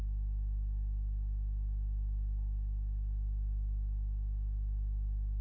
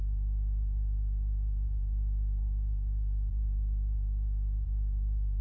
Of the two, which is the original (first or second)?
first